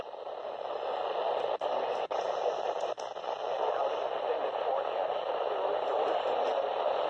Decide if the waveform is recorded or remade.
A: recorded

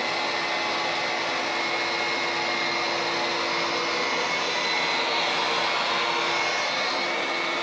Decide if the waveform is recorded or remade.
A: recorded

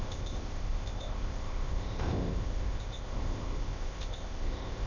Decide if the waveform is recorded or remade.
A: remade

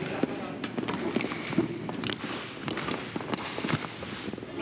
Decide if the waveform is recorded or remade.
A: recorded